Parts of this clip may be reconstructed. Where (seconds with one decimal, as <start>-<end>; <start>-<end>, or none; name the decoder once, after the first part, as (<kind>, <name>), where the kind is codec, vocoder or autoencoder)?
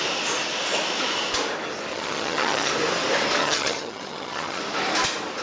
1.9-2.7 (vocoder, HiFi-GAN); 3.4-4.6